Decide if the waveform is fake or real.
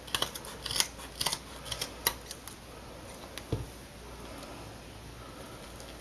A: real